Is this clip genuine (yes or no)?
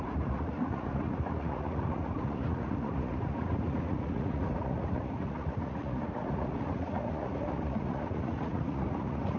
no